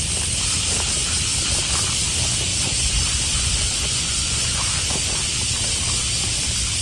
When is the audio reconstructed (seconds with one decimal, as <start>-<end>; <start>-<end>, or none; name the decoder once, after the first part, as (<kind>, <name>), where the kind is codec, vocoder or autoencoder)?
2.5-5.3 (vocoder, Vocos)